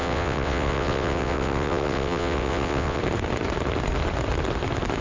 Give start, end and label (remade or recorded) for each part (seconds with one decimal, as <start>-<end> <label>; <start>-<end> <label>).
0.0-3.0 remade; 3.0-5.0 recorded